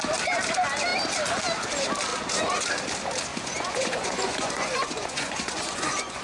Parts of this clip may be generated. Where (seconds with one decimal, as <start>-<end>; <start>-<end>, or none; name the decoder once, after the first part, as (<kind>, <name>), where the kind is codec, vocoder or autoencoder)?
3.3-6.2 (vocoder, Vocos)